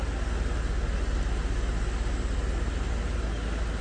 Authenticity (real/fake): real